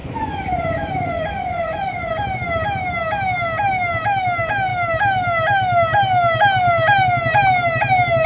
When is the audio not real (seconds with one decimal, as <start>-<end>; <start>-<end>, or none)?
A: 0.0-2.1